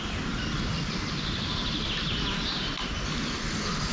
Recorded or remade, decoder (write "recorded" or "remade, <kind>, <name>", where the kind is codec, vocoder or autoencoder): recorded